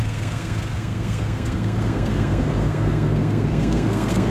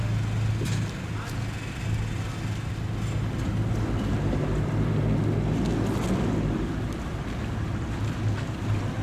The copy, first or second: first